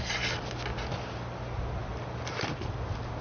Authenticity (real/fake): real